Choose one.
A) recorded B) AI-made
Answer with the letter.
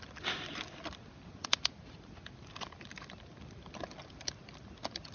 A